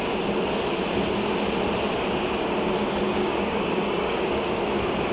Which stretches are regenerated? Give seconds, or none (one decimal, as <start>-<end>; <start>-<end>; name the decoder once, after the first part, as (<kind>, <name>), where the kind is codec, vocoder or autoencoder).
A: 3.2-4.6 (codec, DAC)